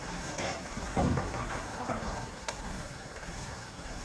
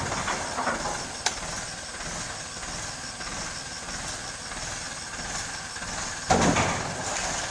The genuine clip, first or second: second